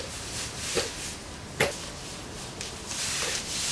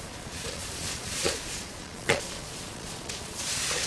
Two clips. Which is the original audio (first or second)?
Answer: first